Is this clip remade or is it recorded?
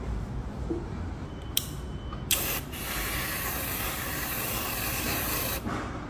remade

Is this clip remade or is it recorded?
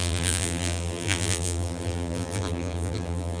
remade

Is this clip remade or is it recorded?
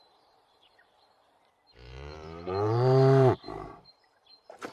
remade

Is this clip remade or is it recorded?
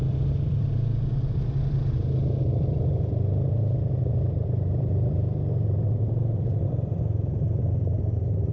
remade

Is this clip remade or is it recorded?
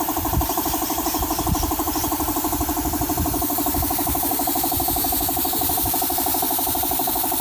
remade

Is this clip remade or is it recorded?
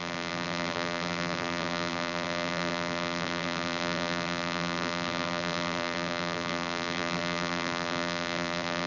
remade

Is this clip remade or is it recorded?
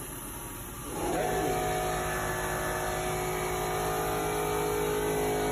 recorded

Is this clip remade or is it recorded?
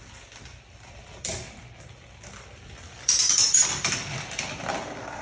remade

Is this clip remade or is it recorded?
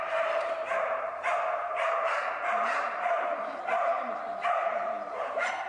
remade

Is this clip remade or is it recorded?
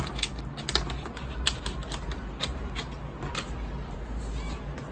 recorded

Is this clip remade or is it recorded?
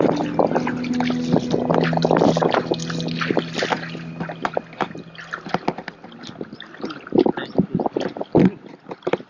recorded